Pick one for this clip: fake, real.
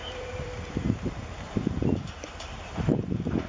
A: fake